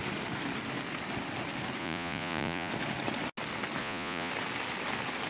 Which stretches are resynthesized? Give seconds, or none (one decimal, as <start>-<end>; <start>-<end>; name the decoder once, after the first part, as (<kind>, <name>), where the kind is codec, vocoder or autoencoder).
1.8-2.7 (vocoder, Vocos); 3.8-4.3